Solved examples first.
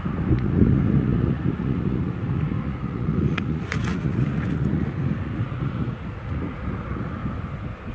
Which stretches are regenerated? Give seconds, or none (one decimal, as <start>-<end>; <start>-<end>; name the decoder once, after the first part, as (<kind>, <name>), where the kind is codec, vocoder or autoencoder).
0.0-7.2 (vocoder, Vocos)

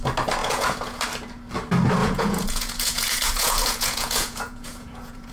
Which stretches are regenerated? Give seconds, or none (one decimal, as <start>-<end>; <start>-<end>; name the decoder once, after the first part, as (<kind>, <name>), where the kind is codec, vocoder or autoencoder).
0.4-1.0 (vocoder, Vocos); 2.0-5.3

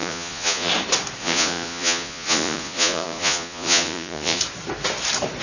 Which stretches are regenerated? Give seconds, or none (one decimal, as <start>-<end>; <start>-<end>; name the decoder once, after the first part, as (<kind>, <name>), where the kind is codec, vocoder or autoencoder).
0.0-0.7 (vocoder, Vocos); 1.2-4.4